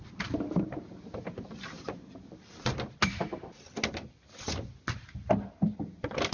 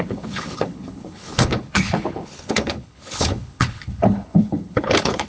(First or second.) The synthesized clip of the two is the second